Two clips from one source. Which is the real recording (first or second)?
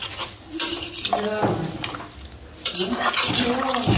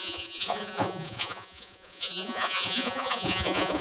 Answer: first